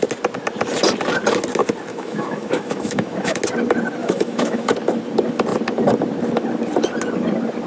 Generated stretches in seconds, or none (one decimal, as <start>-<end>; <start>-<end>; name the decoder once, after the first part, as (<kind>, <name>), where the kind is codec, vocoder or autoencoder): 1.9-3.4 (autoencoder, DAC-VAE); 4.0-4.7